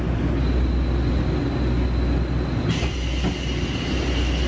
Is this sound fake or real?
real